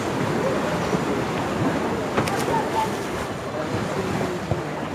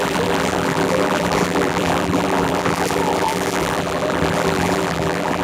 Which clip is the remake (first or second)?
second